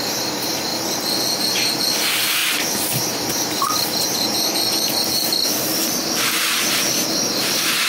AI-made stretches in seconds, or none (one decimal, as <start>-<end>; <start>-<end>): 0.0-0.7; 1.4-2.4; 3.1-5.8; 6.7-7.9